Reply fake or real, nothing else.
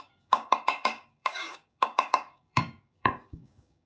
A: fake